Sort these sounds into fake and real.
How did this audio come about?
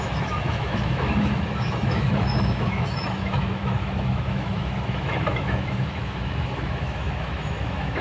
fake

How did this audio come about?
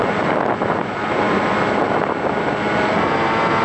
real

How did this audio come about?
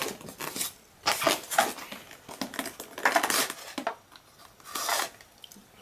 real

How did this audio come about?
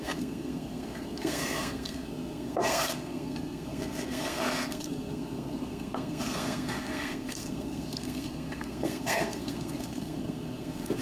fake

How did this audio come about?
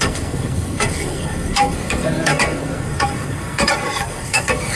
fake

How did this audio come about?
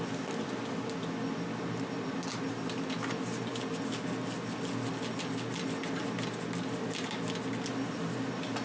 real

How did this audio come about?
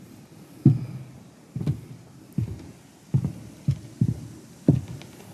real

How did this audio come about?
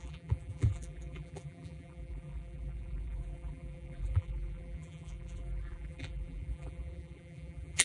fake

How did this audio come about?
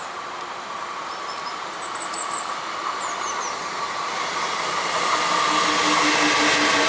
real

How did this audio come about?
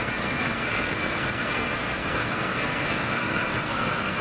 fake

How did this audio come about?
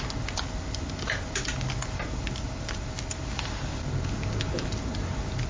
real